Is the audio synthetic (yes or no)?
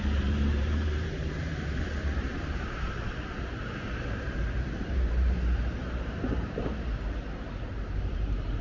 yes